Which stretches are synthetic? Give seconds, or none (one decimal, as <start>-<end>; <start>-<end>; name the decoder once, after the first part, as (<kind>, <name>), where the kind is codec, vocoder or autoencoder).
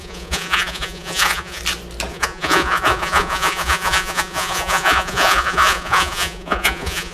0.0-1.6 (vocoder, Vocos); 2.1-7.1